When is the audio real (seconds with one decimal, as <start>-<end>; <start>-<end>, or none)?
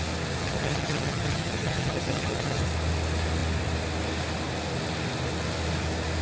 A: 0.0-0.4; 2.6-6.2